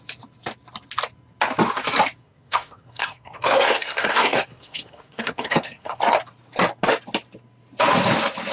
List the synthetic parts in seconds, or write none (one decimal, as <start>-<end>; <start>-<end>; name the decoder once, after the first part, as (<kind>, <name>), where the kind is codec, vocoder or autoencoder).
2.2-6.0 (codec, SNAC)